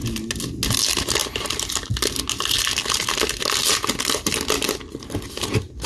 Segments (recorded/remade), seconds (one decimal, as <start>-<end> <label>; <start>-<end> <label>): 0.0-5.9 recorded